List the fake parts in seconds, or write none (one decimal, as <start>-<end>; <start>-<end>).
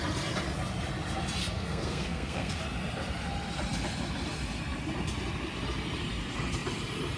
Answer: 1.4-2.6